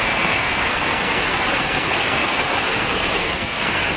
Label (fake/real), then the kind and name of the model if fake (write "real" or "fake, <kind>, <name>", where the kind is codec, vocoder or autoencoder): fake, codec, SNAC